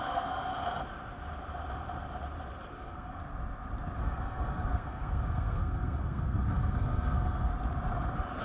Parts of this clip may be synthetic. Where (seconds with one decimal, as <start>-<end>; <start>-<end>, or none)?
0.0-0.5; 2.7-3.2; 4.0-7.5